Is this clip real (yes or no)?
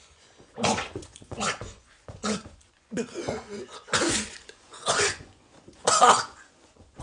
no